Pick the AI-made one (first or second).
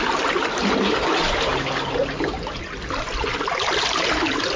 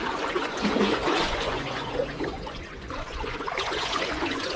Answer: second